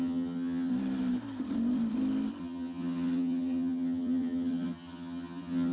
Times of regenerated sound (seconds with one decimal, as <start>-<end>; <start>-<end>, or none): 0.0-0.7; 2.4-5.7

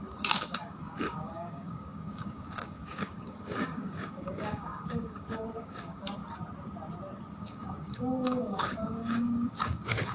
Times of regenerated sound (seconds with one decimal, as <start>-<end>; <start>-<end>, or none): 0.0-6.2; 7.4-10.1

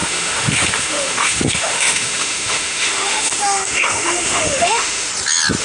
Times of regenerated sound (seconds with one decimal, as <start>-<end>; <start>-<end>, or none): 0.0-5.1

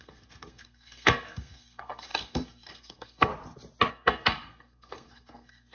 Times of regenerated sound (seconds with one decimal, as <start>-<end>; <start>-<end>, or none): 0.0-3.3; 3.9-5.7